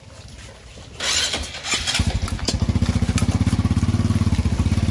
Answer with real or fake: real